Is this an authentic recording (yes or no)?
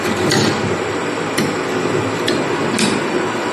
no